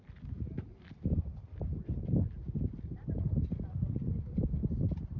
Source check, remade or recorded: recorded